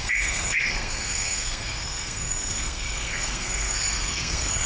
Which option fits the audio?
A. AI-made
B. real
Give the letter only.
A